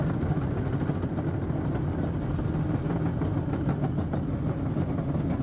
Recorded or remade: recorded